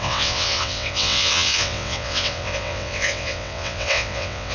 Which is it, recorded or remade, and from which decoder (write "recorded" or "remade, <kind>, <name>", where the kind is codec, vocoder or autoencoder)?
remade, vocoder, WaveNeXt